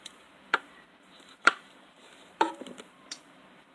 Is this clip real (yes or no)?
no